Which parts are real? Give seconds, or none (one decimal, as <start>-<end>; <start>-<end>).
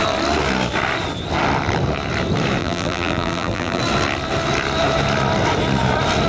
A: 0.0-2.6; 3.8-6.3